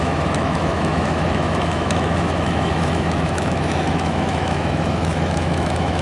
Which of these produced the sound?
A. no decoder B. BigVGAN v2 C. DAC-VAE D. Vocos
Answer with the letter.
C